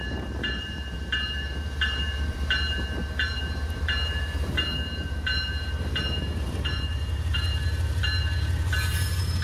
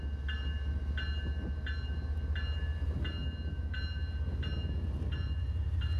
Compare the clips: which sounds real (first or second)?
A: second